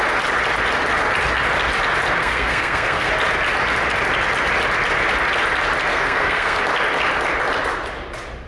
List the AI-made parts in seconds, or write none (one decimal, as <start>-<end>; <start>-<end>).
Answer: 2.2-3.1; 5.9-6.6